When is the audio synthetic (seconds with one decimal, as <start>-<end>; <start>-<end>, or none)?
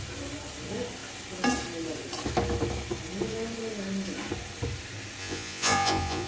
5.2-6.3